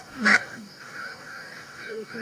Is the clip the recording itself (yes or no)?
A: no